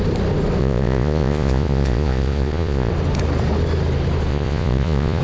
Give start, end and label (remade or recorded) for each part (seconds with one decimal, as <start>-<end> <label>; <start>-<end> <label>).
0.0-0.6 recorded; 0.6-2.9 remade; 2.9-4.3 recorded; 4.3-5.2 remade